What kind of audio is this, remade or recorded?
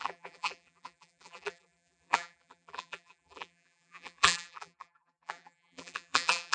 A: remade